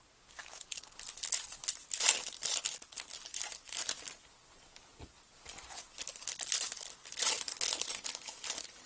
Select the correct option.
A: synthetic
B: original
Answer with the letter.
B